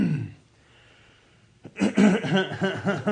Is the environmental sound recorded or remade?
recorded